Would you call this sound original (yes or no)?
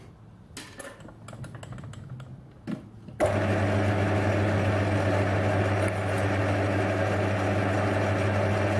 yes